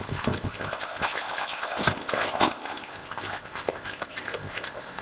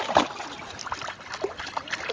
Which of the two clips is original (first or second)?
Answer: second